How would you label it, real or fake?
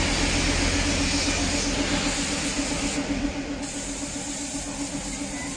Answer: real